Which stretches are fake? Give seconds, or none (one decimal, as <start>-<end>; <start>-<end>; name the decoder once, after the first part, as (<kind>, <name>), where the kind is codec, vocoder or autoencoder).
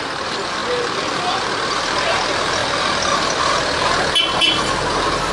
none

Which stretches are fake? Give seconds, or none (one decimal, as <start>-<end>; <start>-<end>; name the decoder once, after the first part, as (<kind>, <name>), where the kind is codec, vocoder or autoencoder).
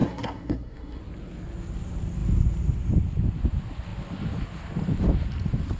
0.0-1.0 (codec, SNAC)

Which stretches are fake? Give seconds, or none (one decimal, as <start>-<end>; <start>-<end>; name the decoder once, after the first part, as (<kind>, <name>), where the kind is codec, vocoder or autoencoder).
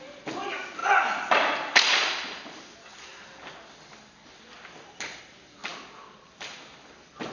none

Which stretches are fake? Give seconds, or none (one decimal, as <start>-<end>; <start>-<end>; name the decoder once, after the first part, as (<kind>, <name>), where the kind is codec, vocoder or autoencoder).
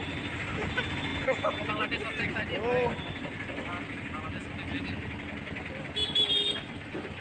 none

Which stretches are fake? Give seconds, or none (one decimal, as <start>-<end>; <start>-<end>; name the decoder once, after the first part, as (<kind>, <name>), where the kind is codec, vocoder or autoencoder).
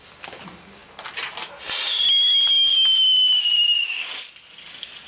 none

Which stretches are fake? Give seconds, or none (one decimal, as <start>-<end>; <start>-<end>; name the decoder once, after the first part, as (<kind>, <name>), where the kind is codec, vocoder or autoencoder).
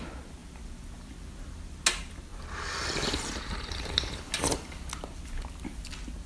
none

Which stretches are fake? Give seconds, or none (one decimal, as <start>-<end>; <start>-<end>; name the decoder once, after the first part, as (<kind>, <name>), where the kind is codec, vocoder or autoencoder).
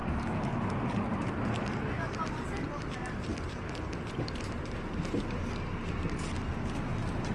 none